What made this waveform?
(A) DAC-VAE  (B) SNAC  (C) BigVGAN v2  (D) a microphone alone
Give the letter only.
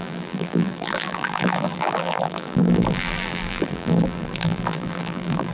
C